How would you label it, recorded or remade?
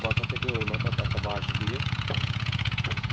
remade